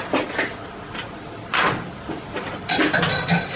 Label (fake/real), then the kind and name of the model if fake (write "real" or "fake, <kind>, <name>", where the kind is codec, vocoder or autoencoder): real